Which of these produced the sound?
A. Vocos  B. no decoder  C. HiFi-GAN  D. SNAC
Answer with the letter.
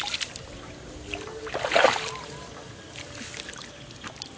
B